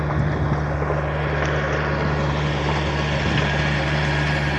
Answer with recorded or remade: recorded